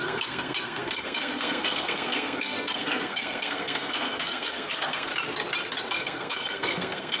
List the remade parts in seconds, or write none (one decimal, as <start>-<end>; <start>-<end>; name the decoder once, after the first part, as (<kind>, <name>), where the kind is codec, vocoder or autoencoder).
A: 0.0-5.1 (codec, SNAC); 5.9-7.2